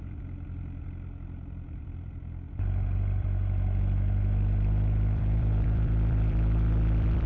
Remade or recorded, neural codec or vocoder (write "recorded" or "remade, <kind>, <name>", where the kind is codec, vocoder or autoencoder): remade, vocoder, BigVGAN v2